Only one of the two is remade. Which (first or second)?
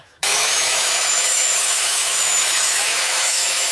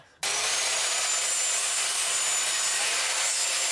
first